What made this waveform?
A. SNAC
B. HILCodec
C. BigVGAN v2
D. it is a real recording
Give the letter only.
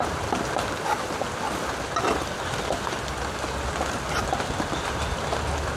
D